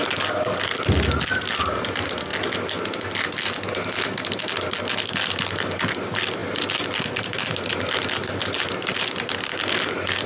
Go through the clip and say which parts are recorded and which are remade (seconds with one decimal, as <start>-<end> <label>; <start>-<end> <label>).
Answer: 0.0-10.3 recorded